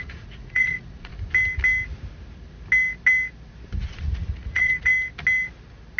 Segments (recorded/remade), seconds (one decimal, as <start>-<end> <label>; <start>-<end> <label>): 0.0-1.1 remade; 1.1-3.9 recorded; 3.9-4.9 remade; 4.9-6.0 recorded